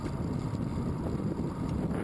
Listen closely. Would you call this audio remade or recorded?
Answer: recorded